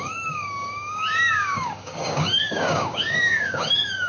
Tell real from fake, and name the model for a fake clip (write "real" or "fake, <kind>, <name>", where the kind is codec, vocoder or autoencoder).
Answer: fake, codec, DAC